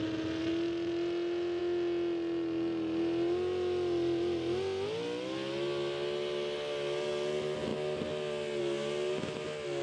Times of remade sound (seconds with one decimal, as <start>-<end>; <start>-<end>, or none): none